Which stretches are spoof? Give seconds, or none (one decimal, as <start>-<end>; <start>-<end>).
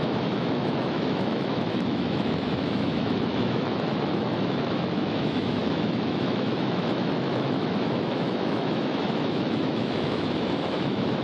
0.0-11.2